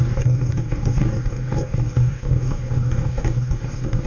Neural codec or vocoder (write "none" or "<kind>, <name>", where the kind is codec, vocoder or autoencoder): codec, DAC